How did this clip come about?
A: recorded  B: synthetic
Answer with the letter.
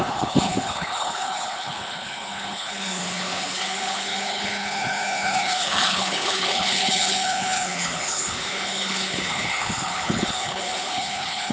B